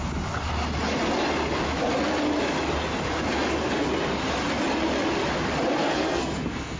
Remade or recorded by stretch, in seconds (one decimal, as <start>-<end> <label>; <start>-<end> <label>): 0.0-5.8 recorded; 5.8-6.8 remade